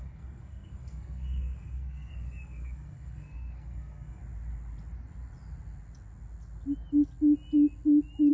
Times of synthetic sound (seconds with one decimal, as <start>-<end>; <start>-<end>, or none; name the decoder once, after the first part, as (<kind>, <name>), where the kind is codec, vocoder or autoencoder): 0.0-4.2 (codec, SNAC)